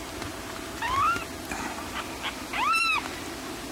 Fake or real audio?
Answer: real